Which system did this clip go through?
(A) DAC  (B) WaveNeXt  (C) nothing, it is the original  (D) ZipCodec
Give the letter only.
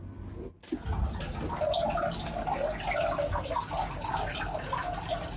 C